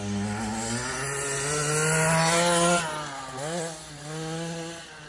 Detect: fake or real real